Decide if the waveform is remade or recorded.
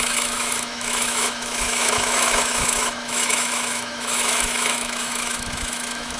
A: remade